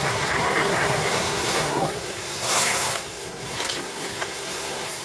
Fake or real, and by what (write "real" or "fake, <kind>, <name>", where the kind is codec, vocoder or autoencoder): fake, codec, SNAC